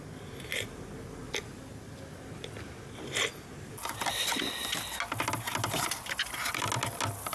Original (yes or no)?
yes